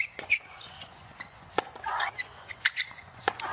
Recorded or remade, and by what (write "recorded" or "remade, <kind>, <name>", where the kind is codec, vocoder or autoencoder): remade, vocoder, Vocos